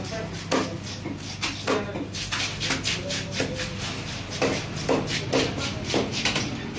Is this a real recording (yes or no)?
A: yes